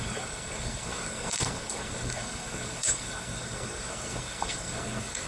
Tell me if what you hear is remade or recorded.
remade